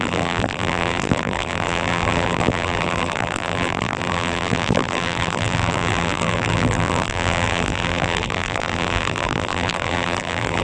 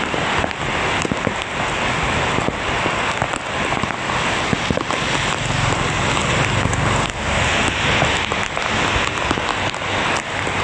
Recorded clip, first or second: second